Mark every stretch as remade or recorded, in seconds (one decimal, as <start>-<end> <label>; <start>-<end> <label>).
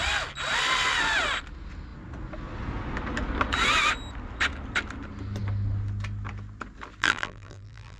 0.0-7.0 recorded; 7.0-8.0 remade